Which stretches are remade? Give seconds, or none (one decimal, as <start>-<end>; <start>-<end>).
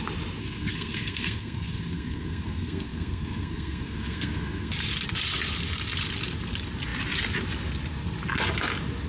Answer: 0.4-4.7